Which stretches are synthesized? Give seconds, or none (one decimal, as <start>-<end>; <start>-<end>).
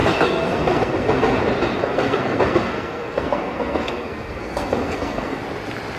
0.0-1.4; 1.8-5.4